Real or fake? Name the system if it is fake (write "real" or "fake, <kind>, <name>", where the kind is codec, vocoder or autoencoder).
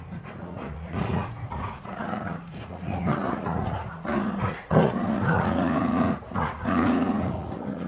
fake, vocoder, Vocos